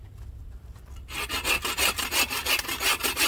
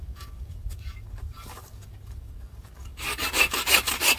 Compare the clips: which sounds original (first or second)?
first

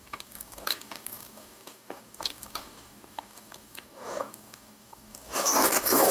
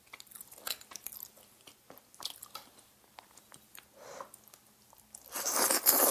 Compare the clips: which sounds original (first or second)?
second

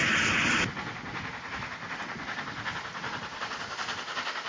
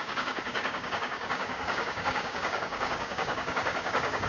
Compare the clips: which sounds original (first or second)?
first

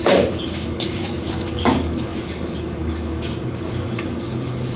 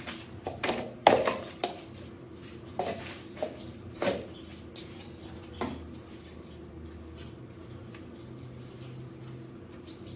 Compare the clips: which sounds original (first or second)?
second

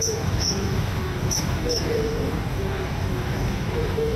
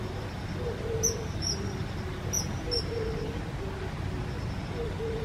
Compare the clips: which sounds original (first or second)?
second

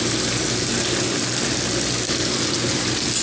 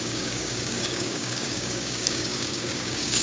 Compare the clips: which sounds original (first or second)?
first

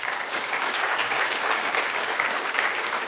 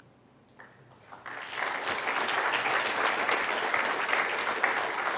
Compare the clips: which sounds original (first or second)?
second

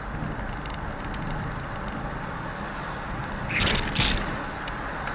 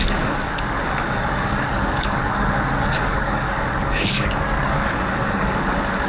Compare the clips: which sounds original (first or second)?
first